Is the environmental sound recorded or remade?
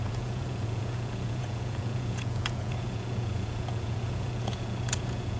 remade